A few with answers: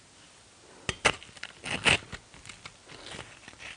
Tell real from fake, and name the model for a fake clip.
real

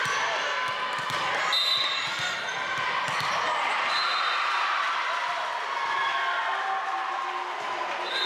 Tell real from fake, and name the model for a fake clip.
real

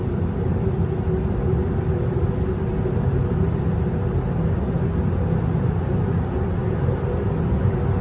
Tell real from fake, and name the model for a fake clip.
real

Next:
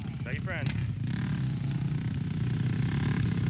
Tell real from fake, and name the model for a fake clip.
real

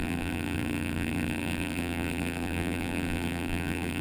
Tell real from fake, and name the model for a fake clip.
fake, vocoder, BigVGAN v2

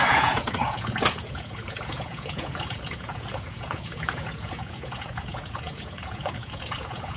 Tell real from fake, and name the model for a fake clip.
fake, vocoder, Vocos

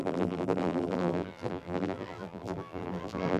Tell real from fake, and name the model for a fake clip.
fake, vocoder, BigVGAN v2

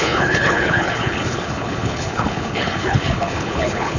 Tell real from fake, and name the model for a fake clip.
fake, codec, HILCodec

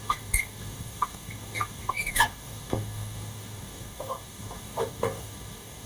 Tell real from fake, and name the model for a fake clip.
fake, codec, DAC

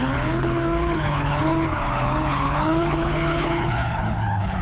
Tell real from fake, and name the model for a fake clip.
fake, codec, HILCodec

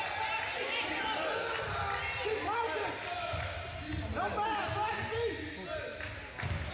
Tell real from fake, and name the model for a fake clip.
real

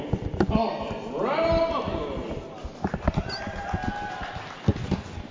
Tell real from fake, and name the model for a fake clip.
real